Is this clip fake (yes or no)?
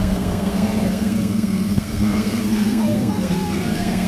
yes